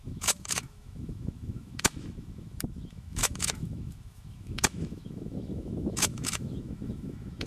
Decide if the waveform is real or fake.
fake